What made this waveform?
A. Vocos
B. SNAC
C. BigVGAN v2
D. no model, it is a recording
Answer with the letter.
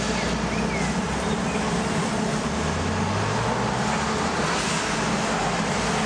D